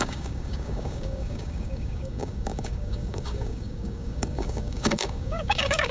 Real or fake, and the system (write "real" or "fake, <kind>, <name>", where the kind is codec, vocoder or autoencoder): fake, codec, DAC